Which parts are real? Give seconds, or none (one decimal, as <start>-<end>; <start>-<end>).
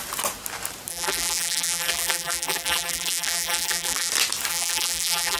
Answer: 0.0-0.9; 4.1-4.5